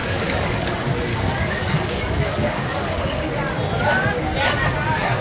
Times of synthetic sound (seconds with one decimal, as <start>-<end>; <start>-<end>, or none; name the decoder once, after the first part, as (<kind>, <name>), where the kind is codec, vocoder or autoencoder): 0.0-0.7 (codec, DAC); 1.1-3.3